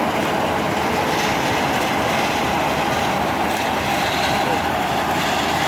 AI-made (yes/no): no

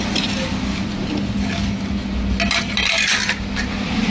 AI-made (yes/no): no